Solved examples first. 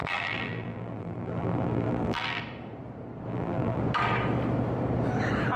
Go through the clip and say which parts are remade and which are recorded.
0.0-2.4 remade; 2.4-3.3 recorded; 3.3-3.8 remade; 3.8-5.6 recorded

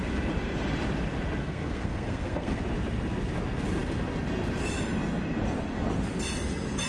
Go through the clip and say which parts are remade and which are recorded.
0.0-1.4 recorded; 1.4-2.6 remade; 2.6-6.9 recorded

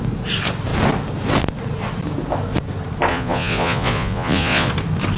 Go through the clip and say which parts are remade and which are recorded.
0.0-3.1 recorded; 3.1-4.7 remade; 4.7-5.2 recorded

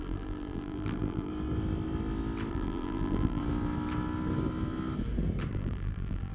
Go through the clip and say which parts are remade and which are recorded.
0.0-1.3 remade; 1.3-2.5 recorded; 2.5-3.4 remade; 3.4-5.5 recorded; 5.5-6.3 remade

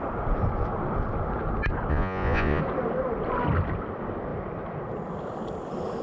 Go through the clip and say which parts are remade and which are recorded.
0.0-1.9 recorded; 1.9-2.6 remade; 2.6-6.0 recorded

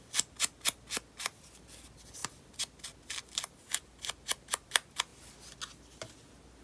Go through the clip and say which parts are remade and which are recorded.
0.0-6.6 recorded